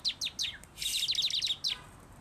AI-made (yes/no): no